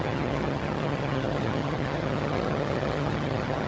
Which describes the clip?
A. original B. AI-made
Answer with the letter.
B